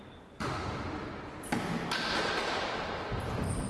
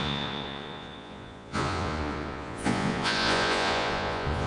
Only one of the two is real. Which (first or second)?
first